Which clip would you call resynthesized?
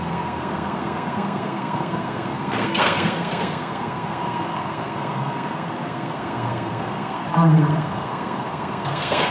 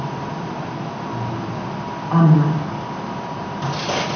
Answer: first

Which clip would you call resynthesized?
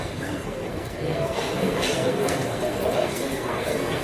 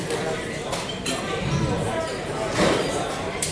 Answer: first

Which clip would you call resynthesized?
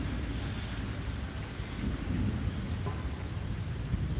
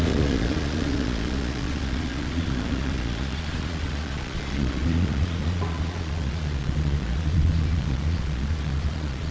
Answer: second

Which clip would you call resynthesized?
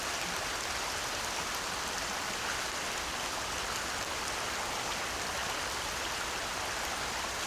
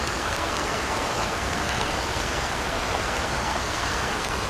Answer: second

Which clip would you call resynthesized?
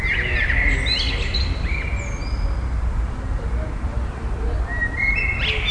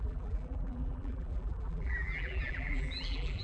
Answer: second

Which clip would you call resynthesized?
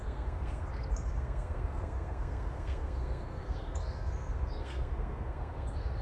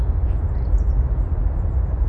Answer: first